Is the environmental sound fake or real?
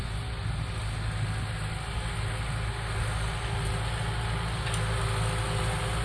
real